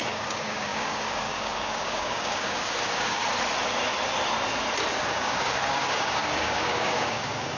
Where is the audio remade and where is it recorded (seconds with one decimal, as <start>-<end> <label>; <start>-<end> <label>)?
0.0-3.2 remade; 3.2-5.0 recorded; 5.0-7.6 remade